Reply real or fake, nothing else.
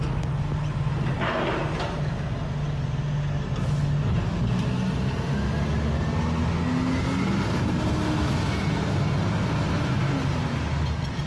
real